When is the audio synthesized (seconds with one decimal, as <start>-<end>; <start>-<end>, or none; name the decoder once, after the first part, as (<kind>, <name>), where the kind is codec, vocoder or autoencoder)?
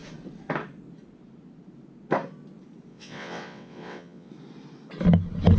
2.9-4.3 (vocoder, WaveNeXt)